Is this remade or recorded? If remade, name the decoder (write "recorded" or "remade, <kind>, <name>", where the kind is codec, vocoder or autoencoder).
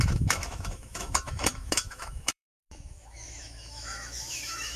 remade, autoencoder, DAC-VAE